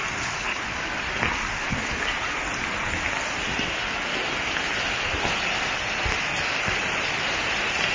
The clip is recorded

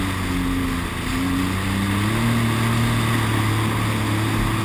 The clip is recorded